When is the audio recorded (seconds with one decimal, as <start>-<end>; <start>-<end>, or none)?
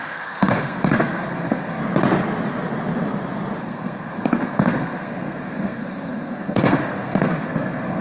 1.8-3.6